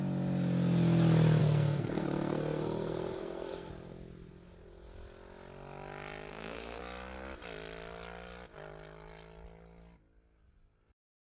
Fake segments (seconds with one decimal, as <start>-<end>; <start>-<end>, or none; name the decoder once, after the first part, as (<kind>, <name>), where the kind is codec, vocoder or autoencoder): 1.4-3.7 (codec, SNAC); 6.3-6.8